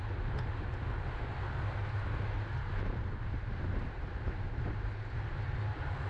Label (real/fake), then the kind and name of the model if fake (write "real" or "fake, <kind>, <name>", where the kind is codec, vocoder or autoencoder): real